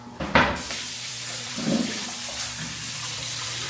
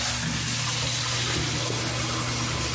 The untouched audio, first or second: second